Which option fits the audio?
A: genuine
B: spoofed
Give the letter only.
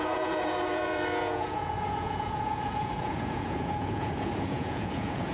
B